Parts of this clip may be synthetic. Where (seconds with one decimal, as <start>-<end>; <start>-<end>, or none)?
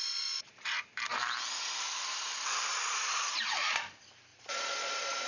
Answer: 0.0-0.5; 2.7-3.4; 4.3-5.3